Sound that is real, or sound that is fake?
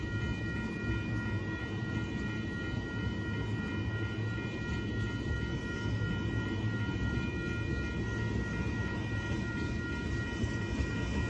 real